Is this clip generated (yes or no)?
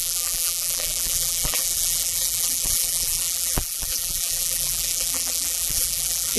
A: yes